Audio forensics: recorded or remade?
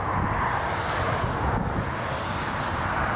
recorded